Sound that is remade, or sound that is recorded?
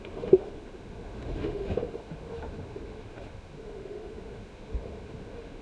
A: remade